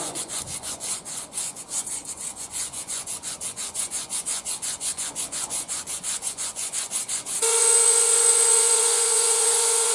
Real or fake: fake